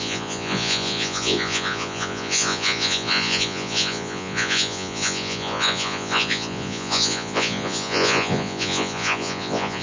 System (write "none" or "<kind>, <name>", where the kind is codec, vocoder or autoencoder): vocoder, Vocos